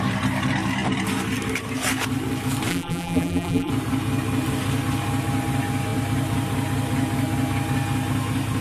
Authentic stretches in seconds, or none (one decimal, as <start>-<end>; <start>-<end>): 0.0-2.7; 3.7-8.6